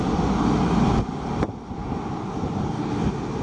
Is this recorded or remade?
recorded